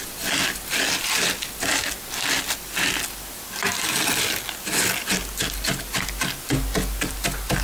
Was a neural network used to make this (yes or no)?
no